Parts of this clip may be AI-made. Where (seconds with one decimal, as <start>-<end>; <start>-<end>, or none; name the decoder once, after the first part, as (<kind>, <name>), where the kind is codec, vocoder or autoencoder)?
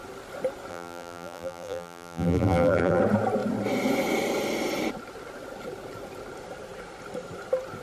0.7-3.0 (vocoder, BigVGAN v2)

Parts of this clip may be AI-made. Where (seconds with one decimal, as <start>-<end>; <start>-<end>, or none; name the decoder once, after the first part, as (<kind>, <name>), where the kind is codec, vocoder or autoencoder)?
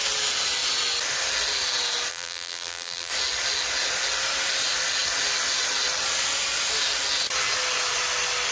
2.1-3.1 (vocoder, BigVGAN v2)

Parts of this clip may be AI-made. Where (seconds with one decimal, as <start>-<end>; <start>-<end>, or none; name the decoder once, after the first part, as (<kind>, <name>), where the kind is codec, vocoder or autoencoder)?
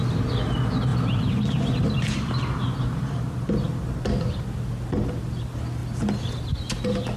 none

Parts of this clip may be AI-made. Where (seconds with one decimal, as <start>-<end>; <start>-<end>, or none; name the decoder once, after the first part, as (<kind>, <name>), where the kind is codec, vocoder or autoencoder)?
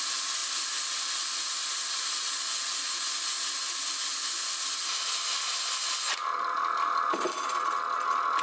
4.1-5.8 (vocoder, BigVGAN v2); 6.2-7.3